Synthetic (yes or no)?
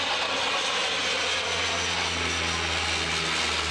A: no